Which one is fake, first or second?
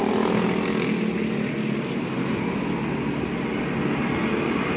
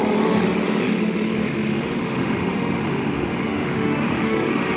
second